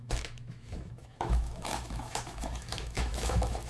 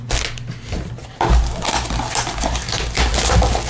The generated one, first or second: first